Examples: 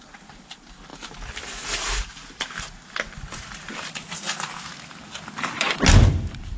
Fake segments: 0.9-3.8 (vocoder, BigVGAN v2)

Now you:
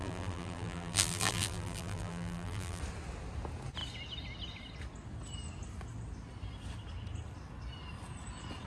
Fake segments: 0.0-2.8 (vocoder, BigVGAN v2)